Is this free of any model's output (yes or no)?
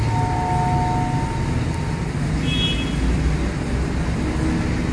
yes